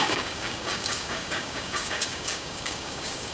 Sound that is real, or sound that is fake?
fake